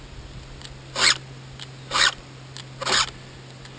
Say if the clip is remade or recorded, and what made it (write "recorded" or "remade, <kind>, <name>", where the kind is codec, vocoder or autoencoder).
recorded